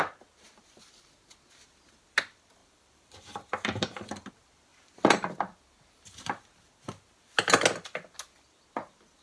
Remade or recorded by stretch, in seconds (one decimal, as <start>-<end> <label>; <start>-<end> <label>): 0.0-2.6 recorded; 2.6-4.3 remade; 4.3-4.7 recorded; 4.7-5.3 remade; 5.3-9.2 recorded